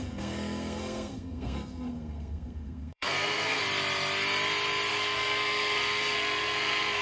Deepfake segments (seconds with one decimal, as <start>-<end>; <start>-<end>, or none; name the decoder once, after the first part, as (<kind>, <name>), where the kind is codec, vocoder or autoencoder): 0.0-3.6 (codec, SNAC); 4.9-7.0